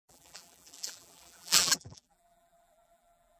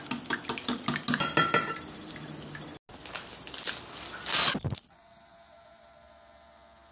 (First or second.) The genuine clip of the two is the second